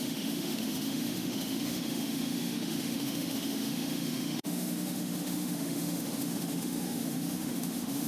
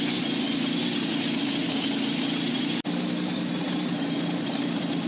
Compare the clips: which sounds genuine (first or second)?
second